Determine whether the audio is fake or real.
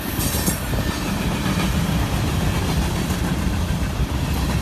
real